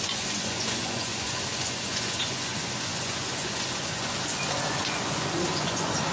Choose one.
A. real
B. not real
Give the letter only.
B